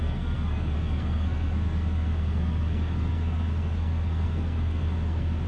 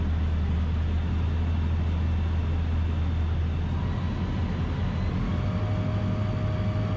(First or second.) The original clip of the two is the second